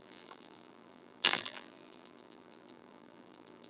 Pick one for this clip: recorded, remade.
remade